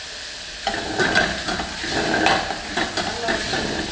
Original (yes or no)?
yes